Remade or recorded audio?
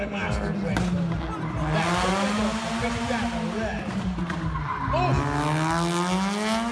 recorded